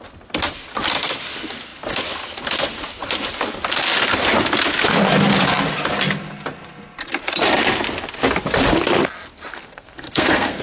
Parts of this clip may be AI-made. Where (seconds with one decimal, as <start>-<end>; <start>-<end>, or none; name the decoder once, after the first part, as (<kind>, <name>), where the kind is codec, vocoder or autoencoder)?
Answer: 9.5-10.6 (codec, SNAC)